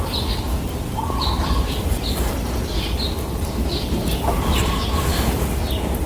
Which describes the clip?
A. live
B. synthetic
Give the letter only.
A